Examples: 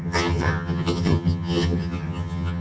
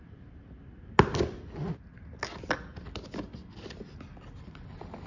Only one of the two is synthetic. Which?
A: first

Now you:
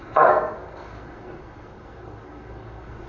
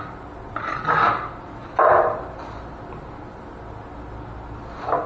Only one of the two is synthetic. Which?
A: first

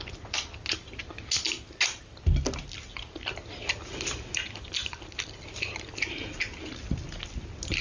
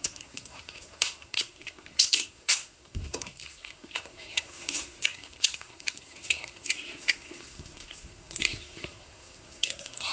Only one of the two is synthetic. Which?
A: second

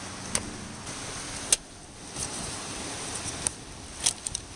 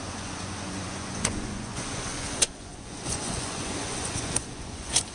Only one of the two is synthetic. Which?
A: second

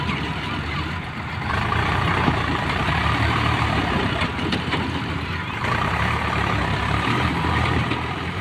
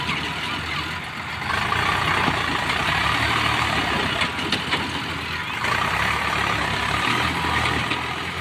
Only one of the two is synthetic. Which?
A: first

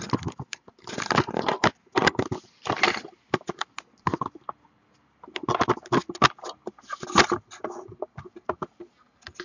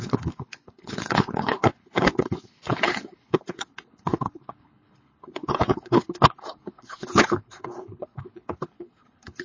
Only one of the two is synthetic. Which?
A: second